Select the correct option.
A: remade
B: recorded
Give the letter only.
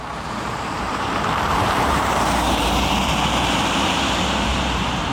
A